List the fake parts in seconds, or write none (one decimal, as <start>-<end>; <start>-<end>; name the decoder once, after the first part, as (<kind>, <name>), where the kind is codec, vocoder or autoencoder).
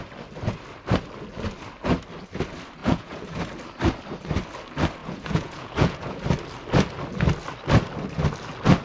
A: 2.8-3.4 (vocoder, Vocos); 5.0-6.2